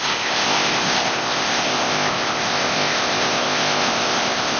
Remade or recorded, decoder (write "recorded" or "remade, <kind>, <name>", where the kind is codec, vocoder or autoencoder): remade, codec, ZipCodec